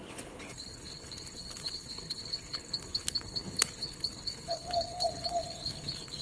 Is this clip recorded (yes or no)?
no